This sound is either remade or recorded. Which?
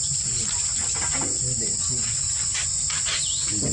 recorded